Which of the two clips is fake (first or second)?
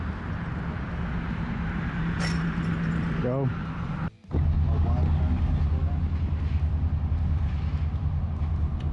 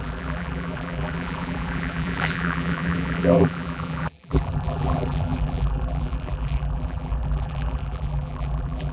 second